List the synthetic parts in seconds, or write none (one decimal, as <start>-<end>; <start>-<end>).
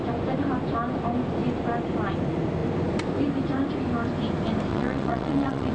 4.7-5.7